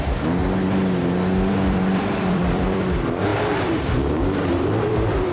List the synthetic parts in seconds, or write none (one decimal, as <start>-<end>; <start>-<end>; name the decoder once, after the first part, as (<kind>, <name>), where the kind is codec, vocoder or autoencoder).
0.0-0.4 (vocoder, BigVGAN v2); 1.5-5.3